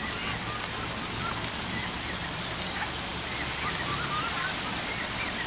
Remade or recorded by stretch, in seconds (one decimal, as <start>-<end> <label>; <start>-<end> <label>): 0.0-5.5 recorded